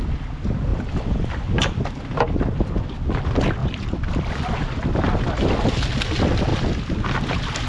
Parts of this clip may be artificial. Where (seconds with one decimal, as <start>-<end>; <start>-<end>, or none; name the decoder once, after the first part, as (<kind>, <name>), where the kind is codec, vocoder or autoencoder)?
0.7-3.2 (vocoder, BigVGAN v2); 3.6-4.3